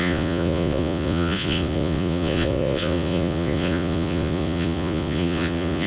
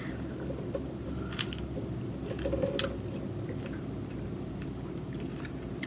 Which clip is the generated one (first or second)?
first